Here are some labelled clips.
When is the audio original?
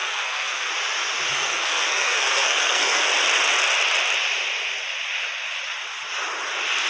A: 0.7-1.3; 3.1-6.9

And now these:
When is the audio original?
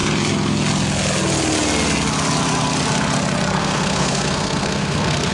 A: 0.0-3.6